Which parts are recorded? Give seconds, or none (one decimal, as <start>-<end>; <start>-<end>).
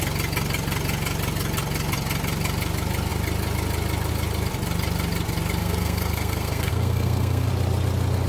0.0-5.6; 7.5-8.3